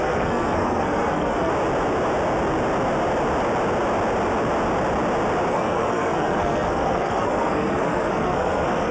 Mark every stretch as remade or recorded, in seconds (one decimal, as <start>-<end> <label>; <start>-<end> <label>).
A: 0.0-1.5 remade; 1.5-5.5 recorded; 5.5-8.9 remade